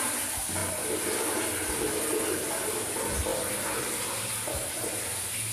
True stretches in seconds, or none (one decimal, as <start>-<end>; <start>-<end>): 0.0-5.5